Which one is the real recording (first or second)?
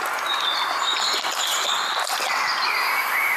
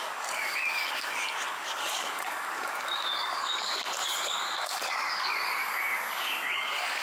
first